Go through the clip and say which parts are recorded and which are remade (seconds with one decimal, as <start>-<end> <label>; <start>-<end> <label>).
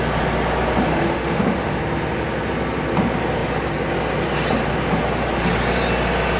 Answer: 0.0-0.9 recorded; 0.9-1.8 remade; 1.8-6.4 recorded